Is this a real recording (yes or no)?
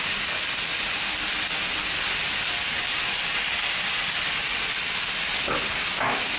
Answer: yes